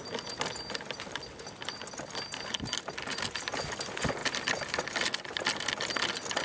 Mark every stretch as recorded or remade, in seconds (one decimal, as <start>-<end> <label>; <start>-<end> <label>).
0.0-6.4 recorded